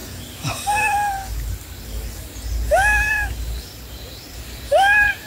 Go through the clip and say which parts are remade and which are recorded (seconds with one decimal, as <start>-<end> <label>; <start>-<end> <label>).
0.0-3.1 recorded; 3.1-5.3 remade